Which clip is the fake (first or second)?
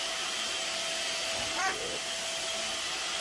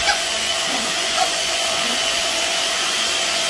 second